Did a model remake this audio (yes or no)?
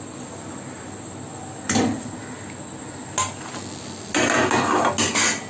no